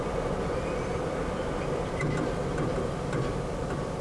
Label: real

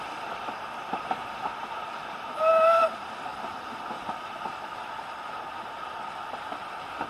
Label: real